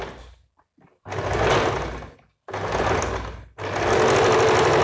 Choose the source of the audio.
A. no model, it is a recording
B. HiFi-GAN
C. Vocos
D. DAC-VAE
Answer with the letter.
A